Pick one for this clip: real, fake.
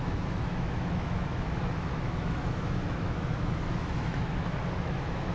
fake